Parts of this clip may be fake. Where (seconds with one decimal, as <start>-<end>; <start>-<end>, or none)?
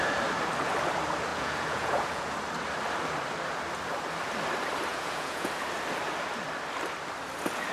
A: 1.3-2.3; 4.9-5.5